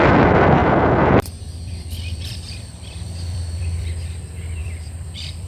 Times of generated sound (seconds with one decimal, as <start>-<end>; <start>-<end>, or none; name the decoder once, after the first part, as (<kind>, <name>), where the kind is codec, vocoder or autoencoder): 0.6-3.9 (vocoder, BigVGAN v2); 4.6-5.5